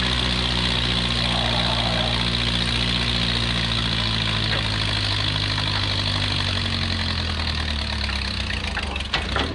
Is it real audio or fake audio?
real